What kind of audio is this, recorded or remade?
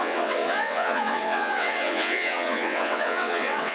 remade